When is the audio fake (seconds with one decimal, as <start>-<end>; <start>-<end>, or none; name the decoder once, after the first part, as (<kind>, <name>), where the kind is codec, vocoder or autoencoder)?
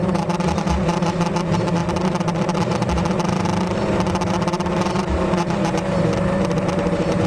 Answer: 0.0-7.3 (vocoder, BigVGAN v2)